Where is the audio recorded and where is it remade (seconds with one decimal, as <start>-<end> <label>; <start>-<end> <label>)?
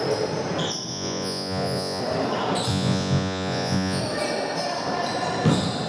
0.0-0.9 recorded; 0.9-2.0 remade; 2.0-2.7 recorded; 2.7-4.0 remade; 4.0-5.9 recorded